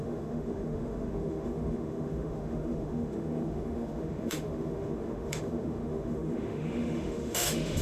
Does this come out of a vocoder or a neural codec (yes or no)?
yes